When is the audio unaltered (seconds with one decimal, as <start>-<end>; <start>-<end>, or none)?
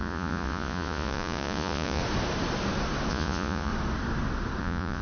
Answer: 2.0-3.1; 3.7-4.6